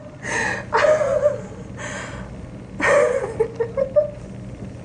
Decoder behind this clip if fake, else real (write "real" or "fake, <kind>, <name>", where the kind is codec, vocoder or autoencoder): real